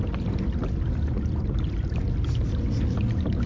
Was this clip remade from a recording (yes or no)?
no